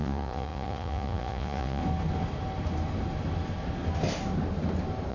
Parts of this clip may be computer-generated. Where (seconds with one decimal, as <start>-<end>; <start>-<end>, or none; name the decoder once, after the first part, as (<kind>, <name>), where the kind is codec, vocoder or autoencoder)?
0.0-1.8 (vocoder, Vocos)